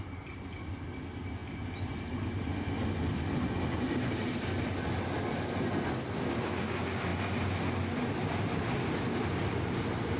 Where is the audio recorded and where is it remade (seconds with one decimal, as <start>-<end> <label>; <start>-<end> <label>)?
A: 0.0-10.2 recorded

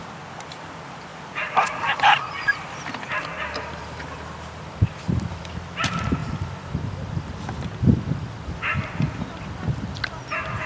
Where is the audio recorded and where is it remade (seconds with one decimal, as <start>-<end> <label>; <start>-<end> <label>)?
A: 0.0-1.1 recorded; 1.1-3.8 remade; 3.8-10.7 recorded

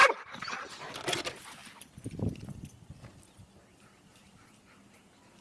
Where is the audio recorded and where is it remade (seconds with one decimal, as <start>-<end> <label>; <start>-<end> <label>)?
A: 0.0-0.7 remade; 0.7-5.4 recorded

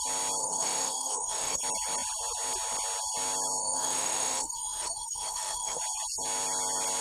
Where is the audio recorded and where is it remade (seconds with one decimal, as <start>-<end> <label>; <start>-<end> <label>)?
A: 0.0-0.4 recorded; 0.4-1.6 remade; 1.6-3.6 recorded; 3.6-5.8 remade; 5.8-7.0 recorded